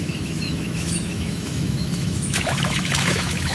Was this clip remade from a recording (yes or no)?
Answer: yes